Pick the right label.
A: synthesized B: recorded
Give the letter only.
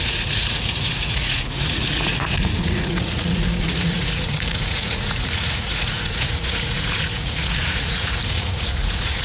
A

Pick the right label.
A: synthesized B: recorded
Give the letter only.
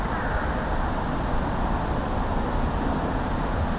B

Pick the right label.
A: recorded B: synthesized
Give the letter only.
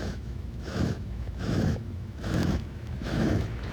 B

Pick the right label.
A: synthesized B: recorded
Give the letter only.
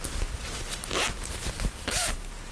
B